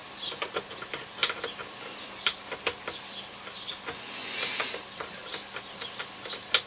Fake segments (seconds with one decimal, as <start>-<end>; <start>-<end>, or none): none